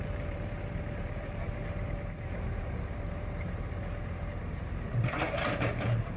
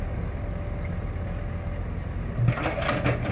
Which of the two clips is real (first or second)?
second